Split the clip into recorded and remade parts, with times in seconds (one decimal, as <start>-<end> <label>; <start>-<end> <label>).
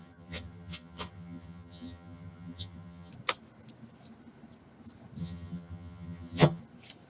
0.0-3.1 remade; 3.1-5.2 recorded; 5.2-6.6 remade; 6.6-7.1 recorded